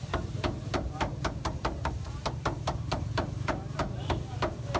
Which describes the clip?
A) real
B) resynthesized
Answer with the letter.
B